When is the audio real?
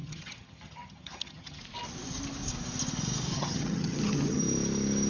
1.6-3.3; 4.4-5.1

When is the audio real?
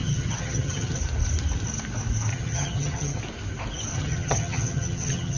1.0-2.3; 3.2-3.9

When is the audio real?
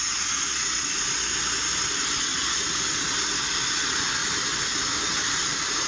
0.0-5.9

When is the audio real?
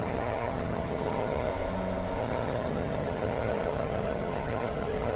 1.5-2.2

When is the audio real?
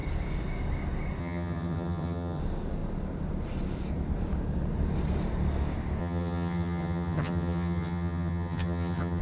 0.0-1.2; 2.4-6.0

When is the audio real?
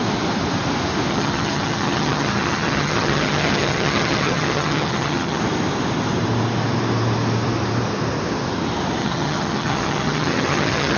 0.0-1.1; 5.4-9.0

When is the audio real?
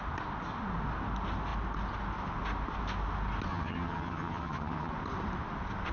0.0-3.5; 4.9-5.9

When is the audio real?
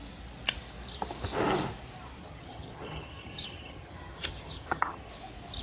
0.0-2.2; 5.1-5.6